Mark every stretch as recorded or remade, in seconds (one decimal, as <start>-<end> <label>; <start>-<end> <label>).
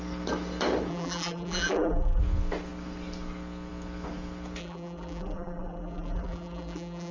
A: 0.0-0.9 recorded; 0.9-2.2 remade; 2.2-4.6 recorded; 4.6-7.1 remade